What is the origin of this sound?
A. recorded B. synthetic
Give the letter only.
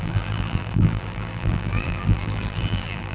B